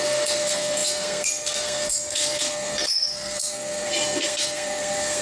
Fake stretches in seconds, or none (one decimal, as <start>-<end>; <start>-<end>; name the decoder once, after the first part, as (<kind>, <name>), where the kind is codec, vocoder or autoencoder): 0.0-5.2 (codec, SNAC)

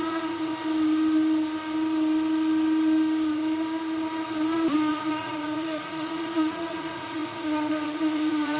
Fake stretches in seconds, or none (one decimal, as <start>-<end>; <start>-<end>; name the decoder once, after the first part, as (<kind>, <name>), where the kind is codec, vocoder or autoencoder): 0.0-0.5 (vocoder, Vocos); 4.9-8.6

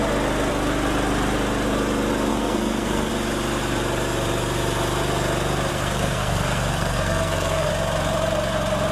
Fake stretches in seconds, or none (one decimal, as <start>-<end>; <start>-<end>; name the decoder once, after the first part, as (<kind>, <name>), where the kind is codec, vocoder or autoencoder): 2.3-3.1 (codec, SNAC); 5.7-7.7

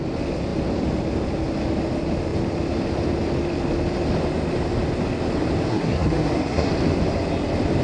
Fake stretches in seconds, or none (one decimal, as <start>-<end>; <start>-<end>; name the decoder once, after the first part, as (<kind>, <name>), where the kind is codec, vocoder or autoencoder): 5.7-6.7 (codec, SNAC)

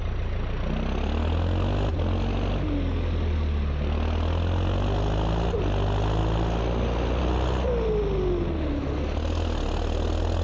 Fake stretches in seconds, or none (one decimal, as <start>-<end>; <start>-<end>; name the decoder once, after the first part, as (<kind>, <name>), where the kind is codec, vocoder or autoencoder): none

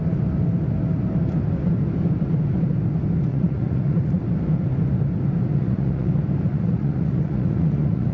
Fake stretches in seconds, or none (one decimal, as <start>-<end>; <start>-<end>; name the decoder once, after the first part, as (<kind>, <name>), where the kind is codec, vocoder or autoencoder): 3.3-4.2 (vocoder, Vocos); 5.5-6.1; 6.5-8.1

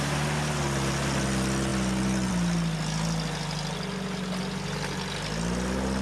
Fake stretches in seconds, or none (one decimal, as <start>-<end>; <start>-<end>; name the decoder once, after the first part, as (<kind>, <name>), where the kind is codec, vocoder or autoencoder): none

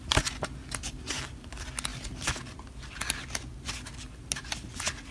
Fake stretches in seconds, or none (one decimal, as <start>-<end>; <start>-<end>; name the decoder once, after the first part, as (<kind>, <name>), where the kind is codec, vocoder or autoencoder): none